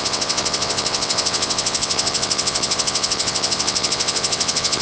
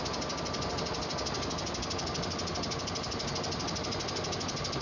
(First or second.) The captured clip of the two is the second